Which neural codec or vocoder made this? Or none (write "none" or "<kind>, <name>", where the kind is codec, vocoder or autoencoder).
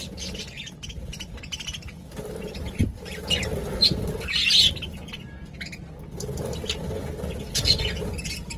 none